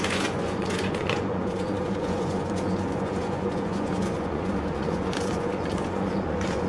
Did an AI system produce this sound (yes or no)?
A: yes